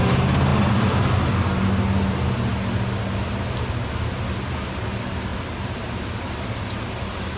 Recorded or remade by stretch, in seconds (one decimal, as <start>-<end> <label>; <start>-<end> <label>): 0.0-7.4 recorded